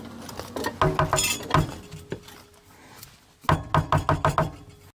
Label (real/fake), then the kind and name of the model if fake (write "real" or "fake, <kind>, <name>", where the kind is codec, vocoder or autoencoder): real